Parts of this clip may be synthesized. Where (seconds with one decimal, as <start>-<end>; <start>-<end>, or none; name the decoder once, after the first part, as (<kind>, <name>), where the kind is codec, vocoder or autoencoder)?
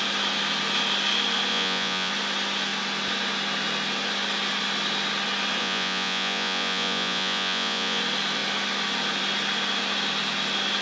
1.5-2.1 (vocoder, Vocos); 5.6-8.0